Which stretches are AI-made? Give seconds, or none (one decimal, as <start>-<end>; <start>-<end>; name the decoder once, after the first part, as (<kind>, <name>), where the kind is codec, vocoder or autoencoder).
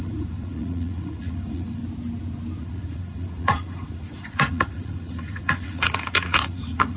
0.0-1.8 (vocoder, Vocos); 2.6-7.0